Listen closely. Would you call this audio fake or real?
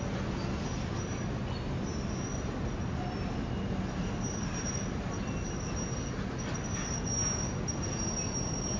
real